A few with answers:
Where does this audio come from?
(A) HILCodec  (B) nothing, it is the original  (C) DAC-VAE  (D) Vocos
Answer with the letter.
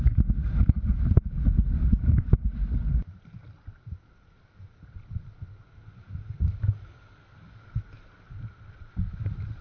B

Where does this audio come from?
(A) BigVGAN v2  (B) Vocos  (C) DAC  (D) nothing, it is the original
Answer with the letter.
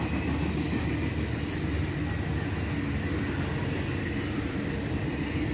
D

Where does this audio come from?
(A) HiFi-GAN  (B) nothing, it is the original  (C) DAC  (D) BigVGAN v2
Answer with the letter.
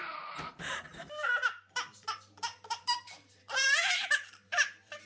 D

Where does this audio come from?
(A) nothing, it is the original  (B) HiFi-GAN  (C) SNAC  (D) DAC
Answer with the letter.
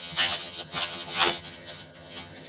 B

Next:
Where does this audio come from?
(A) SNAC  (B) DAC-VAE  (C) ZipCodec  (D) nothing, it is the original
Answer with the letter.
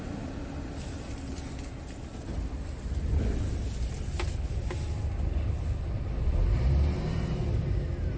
D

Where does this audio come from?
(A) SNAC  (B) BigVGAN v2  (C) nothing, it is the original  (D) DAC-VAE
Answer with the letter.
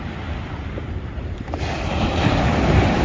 C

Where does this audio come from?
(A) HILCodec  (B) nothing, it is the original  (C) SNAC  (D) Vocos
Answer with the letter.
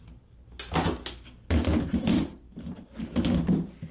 B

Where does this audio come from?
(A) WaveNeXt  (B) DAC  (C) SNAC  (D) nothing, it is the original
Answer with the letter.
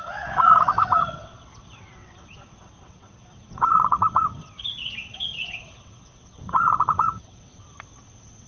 A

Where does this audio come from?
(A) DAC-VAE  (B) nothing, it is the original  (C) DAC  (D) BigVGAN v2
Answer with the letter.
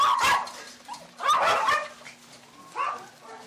B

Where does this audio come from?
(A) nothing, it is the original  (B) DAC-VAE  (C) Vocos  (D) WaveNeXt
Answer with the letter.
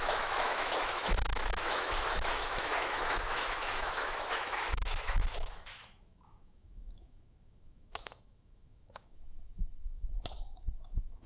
B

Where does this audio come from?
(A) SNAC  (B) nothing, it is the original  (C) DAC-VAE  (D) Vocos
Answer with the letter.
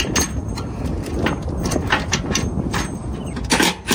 B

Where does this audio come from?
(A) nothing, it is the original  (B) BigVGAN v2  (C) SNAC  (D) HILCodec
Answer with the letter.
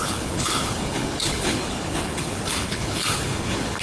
D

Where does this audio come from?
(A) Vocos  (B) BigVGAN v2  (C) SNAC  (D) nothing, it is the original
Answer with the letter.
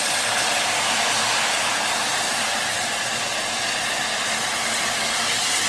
D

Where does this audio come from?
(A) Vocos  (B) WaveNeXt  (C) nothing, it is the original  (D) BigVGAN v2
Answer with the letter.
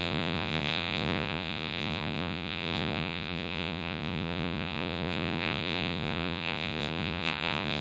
A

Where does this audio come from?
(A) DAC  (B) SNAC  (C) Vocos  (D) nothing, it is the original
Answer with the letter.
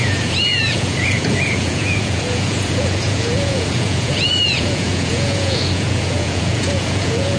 C